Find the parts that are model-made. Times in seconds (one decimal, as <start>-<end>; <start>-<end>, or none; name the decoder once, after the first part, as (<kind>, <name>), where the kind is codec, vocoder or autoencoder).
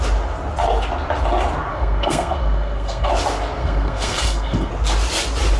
1.7-3.1 (codec, SNAC); 3.6-4.7